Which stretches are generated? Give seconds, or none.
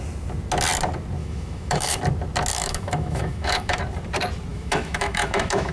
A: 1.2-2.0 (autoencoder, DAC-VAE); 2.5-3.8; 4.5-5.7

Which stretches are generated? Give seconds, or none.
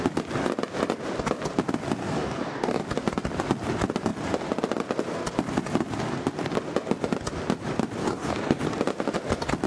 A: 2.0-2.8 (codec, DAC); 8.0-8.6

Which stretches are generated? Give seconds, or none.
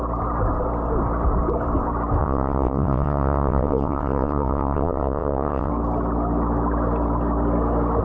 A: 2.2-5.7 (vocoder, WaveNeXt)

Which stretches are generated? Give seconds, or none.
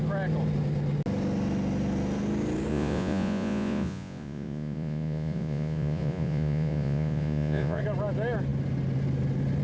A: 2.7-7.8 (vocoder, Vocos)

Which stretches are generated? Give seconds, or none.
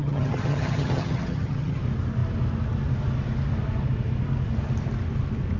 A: 0.0-1.8 (vocoder, HiFi-GAN)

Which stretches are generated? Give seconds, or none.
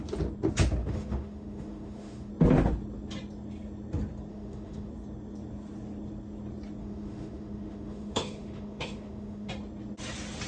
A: 0.8-2.3 (autoencoder, DAC-VAE); 4.3-4.9; 6.8-9.5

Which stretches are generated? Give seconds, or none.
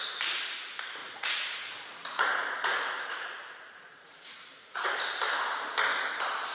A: 1.0-4.9 (vocoder, Vocos)